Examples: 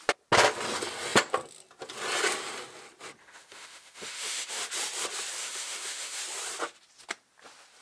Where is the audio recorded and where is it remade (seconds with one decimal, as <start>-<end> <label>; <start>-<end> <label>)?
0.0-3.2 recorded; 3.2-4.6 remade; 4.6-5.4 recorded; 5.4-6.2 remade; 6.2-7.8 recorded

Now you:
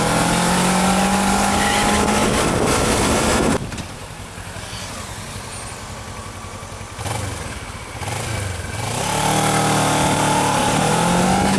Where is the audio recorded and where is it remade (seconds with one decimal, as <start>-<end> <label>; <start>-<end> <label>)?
0.0-11.6 recorded

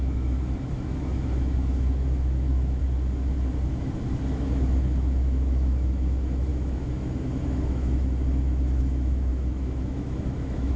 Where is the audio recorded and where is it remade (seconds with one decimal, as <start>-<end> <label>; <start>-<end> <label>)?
0.0-2.8 remade; 2.8-3.7 recorded; 3.7-10.8 remade